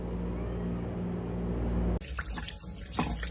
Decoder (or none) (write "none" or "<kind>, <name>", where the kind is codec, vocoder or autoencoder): none